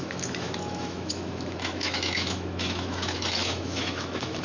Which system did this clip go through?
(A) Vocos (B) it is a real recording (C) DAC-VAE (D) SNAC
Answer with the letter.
C